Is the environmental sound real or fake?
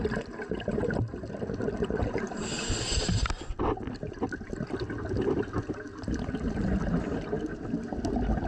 real